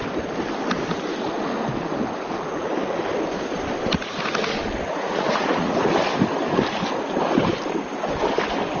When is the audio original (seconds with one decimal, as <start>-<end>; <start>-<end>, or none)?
0.0-4.8; 5.7-8.8